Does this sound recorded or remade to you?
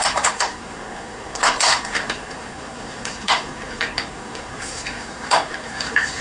remade